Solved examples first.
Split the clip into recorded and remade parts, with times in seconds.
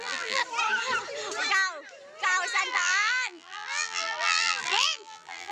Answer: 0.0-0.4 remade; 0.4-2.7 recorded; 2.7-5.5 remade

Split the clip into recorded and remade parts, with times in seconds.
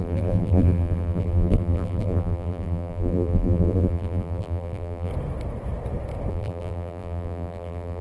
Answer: 0.0-5.1 remade; 5.1-6.3 recorded; 6.3-8.0 remade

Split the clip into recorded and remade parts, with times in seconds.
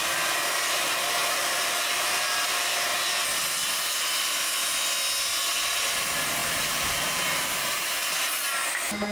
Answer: 0.0-1.2 recorded; 1.2-3.1 remade; 3.1-6.4 recorded; 6.4-7.9 remade; 7.9-9.1 recorded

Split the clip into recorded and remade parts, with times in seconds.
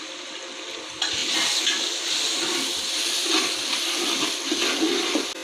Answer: 0.0-5.4 recorded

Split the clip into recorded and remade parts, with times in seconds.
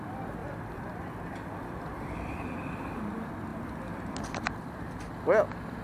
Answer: 0.0-0.4 recorded; 0.4-2.1 remade; 2.1-3.5 recorded; 3.5-5.1 remade; 5.1-5.8 recorded